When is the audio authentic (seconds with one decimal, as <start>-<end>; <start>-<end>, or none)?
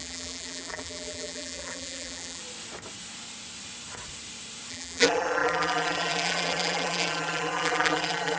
2.4-4.7